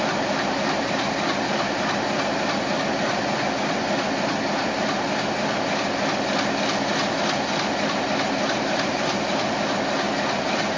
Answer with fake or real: real